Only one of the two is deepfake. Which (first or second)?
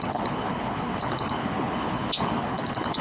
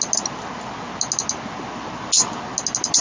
first